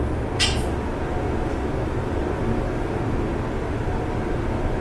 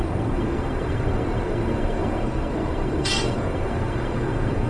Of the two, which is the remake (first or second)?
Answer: second